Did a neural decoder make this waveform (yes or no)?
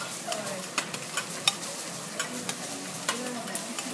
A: no